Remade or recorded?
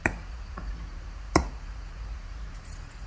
remade